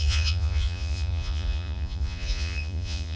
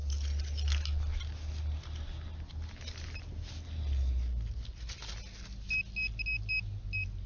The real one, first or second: second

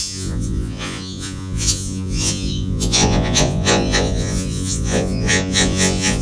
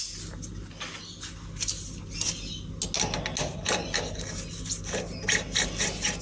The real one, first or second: second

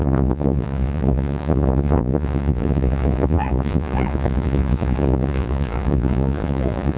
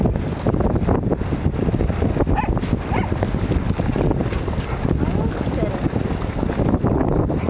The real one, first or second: second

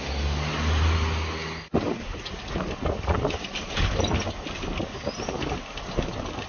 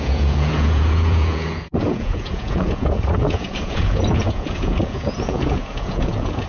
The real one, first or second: first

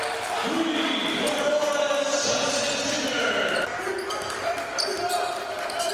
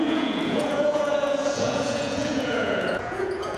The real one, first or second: first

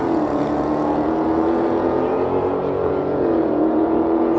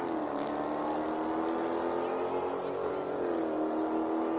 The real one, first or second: second